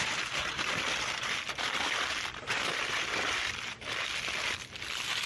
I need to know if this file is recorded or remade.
recorded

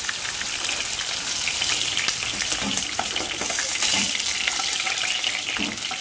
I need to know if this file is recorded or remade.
recorded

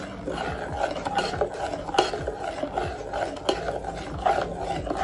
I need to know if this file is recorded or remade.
recorded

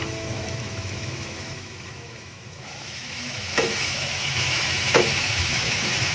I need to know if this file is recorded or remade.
remade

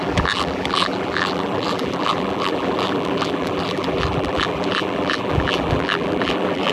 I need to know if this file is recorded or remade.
remade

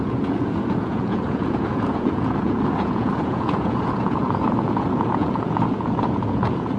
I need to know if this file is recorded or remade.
remade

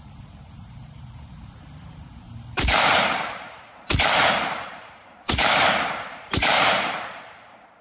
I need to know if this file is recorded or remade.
remade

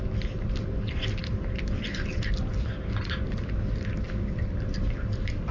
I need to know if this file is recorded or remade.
recorded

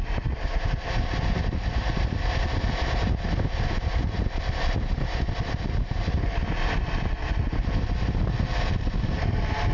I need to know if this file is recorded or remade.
remade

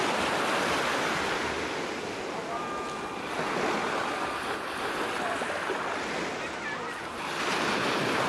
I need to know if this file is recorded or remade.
recorded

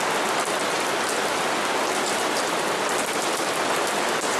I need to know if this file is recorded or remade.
recorded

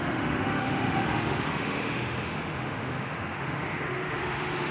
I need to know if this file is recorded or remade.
remade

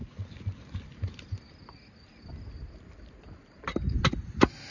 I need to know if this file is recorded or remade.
recorded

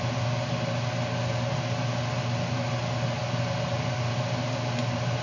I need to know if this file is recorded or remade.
recorded